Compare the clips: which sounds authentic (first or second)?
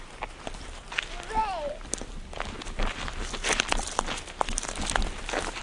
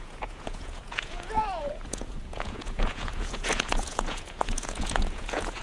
first